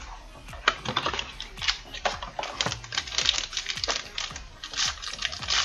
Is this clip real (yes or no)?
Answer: no